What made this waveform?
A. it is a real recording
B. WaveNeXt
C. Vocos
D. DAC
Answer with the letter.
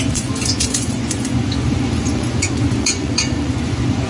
C